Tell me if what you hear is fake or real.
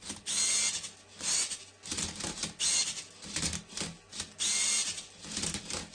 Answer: real